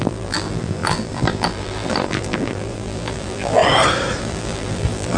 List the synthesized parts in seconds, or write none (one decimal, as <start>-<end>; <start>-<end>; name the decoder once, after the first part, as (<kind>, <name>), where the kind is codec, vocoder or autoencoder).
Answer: 0.0-3.6 (vocoder, BigVGAN v2); 4.2-5.2